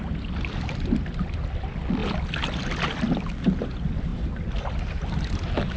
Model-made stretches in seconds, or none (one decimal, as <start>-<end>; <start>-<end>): none